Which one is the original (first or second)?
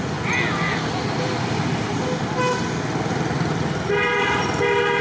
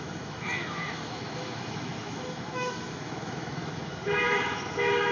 first